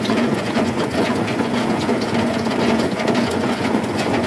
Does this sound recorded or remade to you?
remade